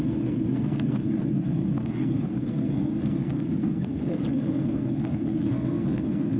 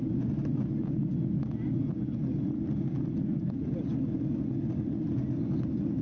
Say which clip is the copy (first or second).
first